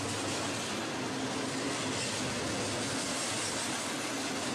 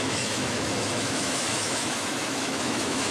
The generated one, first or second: second